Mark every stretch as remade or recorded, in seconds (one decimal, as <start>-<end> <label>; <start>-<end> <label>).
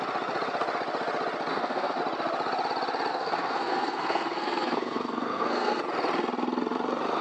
0.0-1.5 recorded; 1.5-2.0 remade; 2.0-3.1 recorded; 3.1-5.8 remade; 5.8-7.2 recorded